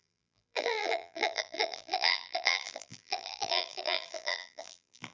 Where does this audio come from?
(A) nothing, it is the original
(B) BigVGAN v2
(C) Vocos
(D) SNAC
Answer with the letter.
B